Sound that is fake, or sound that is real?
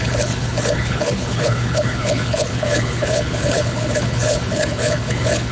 fake